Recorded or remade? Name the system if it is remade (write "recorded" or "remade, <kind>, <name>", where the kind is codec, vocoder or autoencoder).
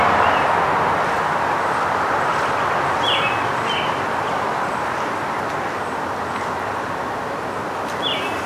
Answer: recorded